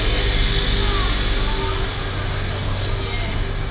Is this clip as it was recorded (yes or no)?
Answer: yes